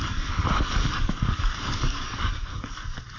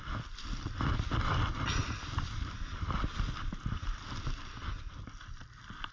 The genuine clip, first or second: second